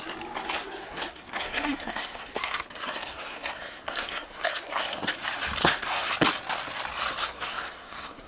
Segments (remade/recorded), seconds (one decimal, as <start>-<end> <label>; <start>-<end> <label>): 0.0-0.6 recorded; 0.6-5.1 remade; 5.1-5.6 recorded; 5.6-6.1 remade; 6.1-7.2 recorded; 7.2-8.3 remade